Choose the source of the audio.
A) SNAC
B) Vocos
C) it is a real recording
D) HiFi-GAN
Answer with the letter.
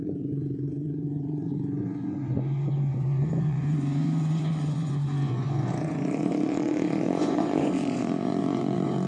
B